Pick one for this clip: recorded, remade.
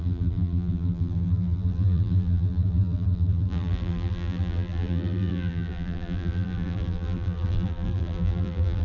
remade